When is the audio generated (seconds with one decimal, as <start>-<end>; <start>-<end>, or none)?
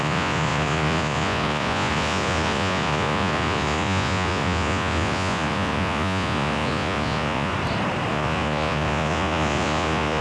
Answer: 0.0-7.5; 8.1-10.2